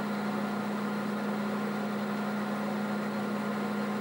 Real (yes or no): yes